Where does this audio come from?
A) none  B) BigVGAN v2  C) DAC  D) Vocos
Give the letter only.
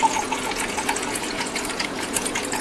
D